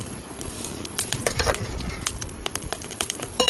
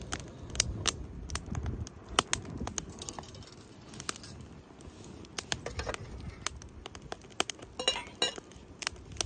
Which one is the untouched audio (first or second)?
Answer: second